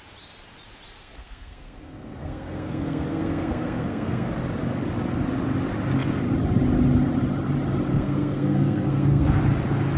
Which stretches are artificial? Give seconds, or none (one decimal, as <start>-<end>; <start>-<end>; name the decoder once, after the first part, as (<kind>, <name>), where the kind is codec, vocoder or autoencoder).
1.0-4.3 (codec, SNAC); 7.9-9.4